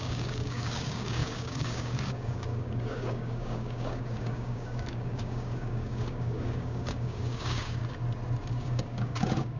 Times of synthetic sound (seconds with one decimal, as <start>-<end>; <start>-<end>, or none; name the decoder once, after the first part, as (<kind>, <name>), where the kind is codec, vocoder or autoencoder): 0.0-7.8 (codec, DAC); 8.5-9.6